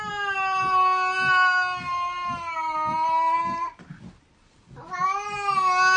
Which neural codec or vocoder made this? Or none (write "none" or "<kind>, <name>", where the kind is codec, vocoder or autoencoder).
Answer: none